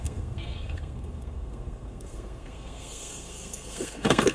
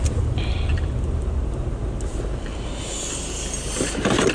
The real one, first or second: second